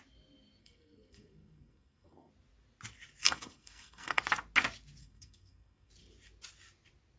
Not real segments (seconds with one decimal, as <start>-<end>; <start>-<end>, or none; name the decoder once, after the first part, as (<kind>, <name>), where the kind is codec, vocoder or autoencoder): 0.6-2.3 (codec, SNAC); 3.2-4.2; 5.0-5.9

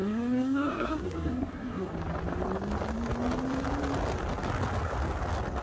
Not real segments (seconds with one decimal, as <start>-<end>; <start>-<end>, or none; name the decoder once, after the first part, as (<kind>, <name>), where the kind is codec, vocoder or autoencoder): 0.0-1.9 (codec, SNAC)

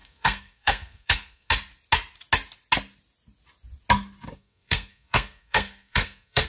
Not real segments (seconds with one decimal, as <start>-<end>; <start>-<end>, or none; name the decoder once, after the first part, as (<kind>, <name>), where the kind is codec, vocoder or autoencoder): 0.0-1.5 (codec, SNAC); 4.3-6.5

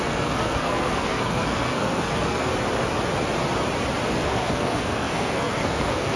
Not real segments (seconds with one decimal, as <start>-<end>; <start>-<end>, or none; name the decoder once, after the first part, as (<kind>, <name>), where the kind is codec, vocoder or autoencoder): 0.0-2.5 (codec, SNAC); 4.1-6.2